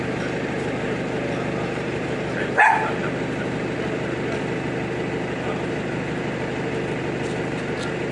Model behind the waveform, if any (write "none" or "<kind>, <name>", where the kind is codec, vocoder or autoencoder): none